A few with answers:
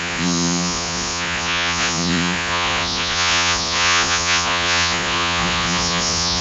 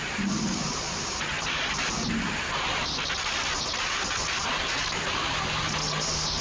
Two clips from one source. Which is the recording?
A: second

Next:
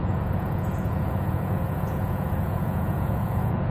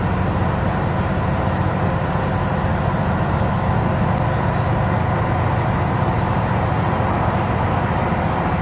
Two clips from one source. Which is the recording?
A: second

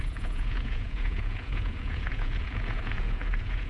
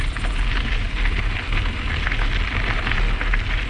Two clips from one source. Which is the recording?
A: second